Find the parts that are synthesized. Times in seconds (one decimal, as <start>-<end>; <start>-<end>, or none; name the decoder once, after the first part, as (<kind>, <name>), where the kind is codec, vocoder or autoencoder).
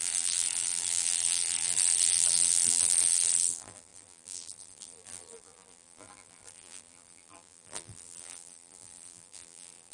0.0-9.9 (vocoder, BigVGAN v2)